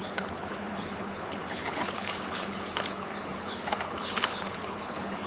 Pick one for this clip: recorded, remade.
remade